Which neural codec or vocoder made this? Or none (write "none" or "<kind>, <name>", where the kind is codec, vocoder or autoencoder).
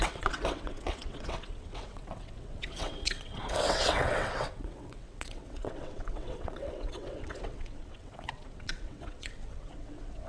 vocoder, WaveNeXt